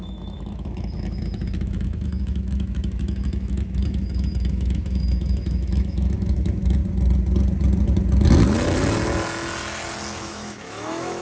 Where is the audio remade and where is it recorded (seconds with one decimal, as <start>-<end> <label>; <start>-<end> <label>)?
0.0-6.8 remade; 6.8-10.2 recorded; 10.2-11.2 remade